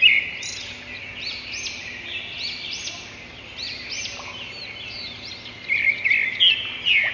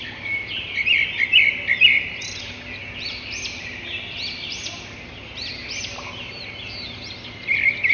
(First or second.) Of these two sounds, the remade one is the second